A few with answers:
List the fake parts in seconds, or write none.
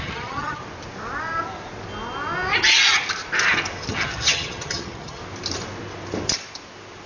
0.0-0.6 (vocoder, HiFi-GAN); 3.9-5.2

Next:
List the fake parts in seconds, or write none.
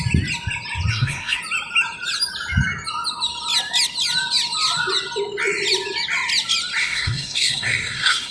0.9-1.4 (codec, SNAC); 6.8-8.3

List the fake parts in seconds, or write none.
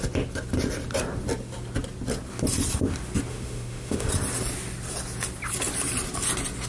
3.3-4.1 (autoencoder, DAC-VAE)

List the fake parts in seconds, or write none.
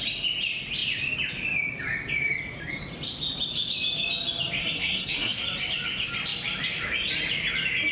4.6-5.4 (codec, SNAC)